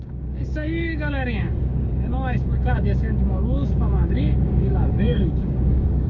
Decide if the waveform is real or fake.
fake